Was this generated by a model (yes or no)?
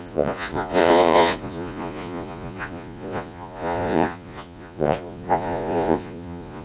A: yes